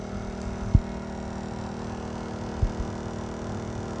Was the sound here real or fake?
real